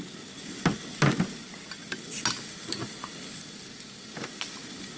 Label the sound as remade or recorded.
recorded